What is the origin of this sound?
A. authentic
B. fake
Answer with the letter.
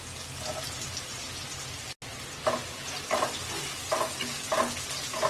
A